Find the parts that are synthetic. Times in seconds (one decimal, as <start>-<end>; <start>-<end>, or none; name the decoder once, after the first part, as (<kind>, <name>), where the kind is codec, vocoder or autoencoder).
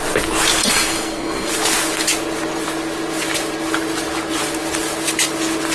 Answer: 0.6-1.5 (codec, SNAC)